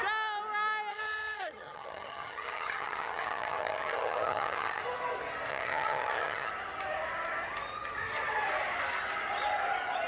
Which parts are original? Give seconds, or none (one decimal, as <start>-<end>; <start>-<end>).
0.0-0.9; 4.8-5.5; 6.5-10.1